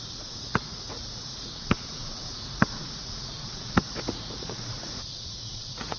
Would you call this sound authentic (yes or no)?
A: no